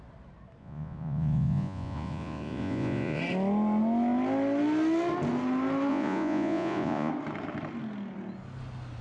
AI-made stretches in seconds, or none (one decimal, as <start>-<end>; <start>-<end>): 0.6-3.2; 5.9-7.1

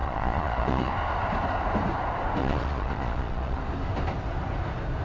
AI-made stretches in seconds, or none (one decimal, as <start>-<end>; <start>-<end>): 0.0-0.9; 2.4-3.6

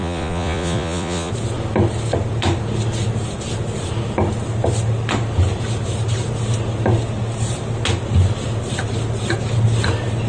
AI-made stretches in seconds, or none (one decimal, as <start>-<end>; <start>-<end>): 0.0-1.3

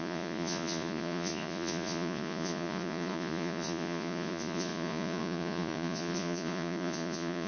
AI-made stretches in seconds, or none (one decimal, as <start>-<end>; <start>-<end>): 0.0-7.5

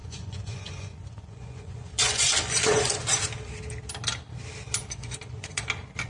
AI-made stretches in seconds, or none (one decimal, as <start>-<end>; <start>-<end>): 0.0-3.0; 4.8-5.6

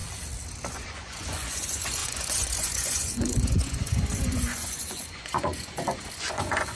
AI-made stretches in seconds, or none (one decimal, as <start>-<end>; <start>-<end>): 0.7-6.8